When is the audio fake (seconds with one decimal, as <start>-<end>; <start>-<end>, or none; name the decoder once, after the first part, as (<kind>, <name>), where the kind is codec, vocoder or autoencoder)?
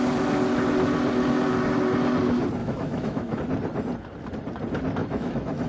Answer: 2.6-3.4 (autoencoder, DAC-VAE); 5.0-5.7